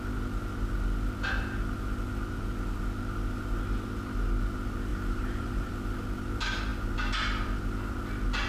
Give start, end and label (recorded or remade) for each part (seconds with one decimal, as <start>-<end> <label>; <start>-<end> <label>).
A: 0.0-4.9 recorded; 4.9-5.7 remade; 5.7-8.5 recorded